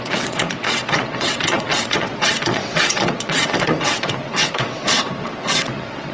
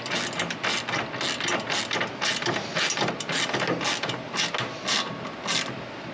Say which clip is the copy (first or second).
first